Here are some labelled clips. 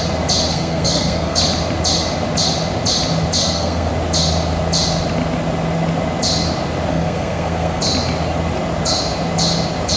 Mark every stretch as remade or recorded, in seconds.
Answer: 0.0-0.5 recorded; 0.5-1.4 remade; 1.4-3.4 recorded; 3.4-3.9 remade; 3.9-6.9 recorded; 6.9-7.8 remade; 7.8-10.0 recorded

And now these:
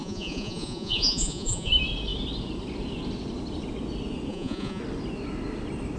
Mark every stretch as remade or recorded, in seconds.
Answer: 0.0-1.7 remade; 1.7-4.3 recorded; 4.3-4.8 remade; 4.8-6.0 recorded

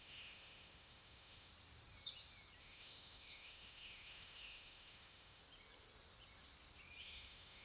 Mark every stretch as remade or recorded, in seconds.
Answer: 0.0-1.5 remade; 1.5-2.6 recorded; 2.6-5.4 remade; 5.4-7.0 recorded; 7.0-7.6 remade

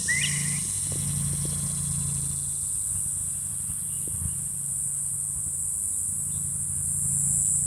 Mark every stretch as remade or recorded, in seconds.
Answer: 0.0-7.7 recorded